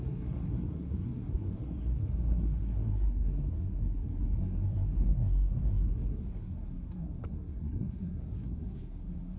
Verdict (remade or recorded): remade